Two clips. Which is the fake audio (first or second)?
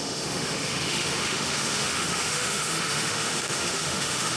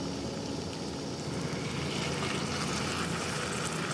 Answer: first